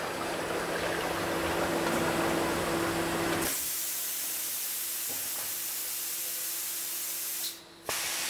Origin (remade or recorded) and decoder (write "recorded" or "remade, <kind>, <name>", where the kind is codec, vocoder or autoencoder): recorded